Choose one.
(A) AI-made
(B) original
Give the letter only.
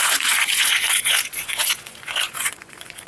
A